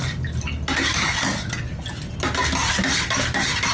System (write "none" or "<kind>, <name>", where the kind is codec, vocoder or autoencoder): none